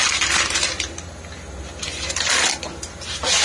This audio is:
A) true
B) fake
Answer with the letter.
A